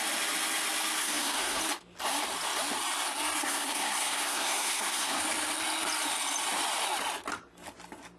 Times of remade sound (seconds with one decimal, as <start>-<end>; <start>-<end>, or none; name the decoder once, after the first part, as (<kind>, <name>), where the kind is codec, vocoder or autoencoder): 1.0-1.6 (codec, SNAC); 3.4-5.2